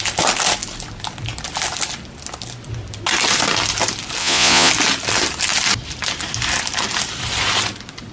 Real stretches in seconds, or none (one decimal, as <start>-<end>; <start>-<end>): 0.0-4.2; 4.7-8.1